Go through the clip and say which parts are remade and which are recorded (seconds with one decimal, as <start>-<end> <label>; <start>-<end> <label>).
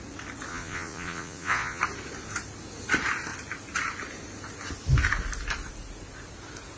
0.0-0.5 recorded; 0.5-1.8 remade; 1.8-6.8 recorded